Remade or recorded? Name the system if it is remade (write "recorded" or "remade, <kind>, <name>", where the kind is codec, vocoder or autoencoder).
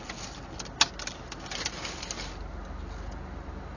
recorded